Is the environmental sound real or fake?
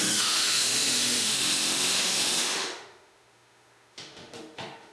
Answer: fake